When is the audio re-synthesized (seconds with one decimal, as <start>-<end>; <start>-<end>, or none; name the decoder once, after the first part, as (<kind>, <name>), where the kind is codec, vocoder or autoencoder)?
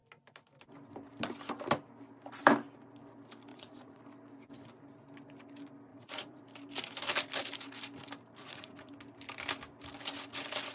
3.5-4.0 (vocoder, Vocos); 5.9-6.4; 8.4-8.9